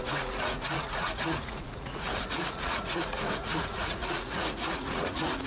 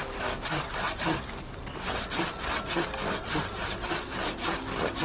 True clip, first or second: second